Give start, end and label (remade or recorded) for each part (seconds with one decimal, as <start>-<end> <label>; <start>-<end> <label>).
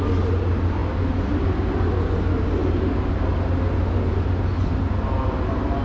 0.0-5.8 recorded